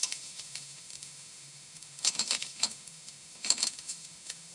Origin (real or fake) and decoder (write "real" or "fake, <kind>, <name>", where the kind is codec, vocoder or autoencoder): fake, autoencoder, DAC-VAE